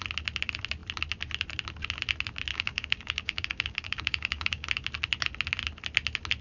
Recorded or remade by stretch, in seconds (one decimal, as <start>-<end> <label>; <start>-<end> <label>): 0.0-2.5 recorded; 2.5-4.7 remade; 4.7-6.4 recorded